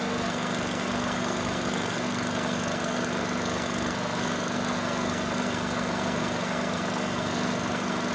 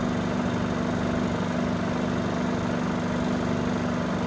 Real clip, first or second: second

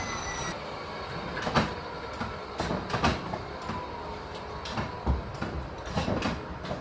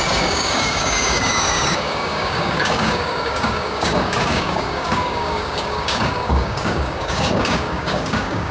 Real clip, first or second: first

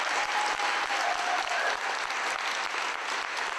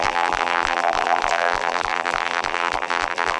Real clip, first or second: first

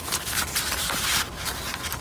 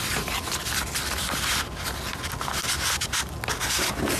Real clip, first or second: second